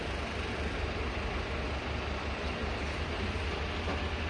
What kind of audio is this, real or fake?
real